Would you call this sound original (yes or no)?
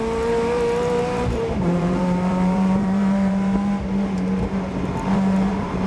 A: no